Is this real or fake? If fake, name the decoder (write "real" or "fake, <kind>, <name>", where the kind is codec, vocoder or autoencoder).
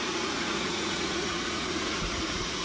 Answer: fake, vocoder, Vocos